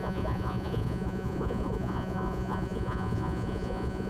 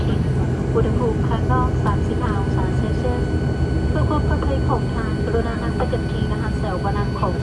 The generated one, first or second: first